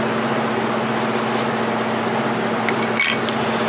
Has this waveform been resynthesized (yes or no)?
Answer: no